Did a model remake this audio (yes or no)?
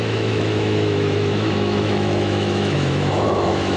yes